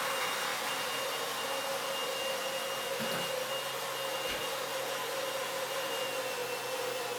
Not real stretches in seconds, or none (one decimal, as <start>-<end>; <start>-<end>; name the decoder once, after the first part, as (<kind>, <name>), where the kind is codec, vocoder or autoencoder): none